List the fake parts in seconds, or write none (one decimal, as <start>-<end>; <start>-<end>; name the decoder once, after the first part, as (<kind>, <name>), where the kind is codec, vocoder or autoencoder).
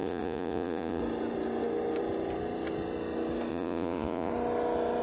0.0-1.0 (vocoder, Vocos); 3.5-4.3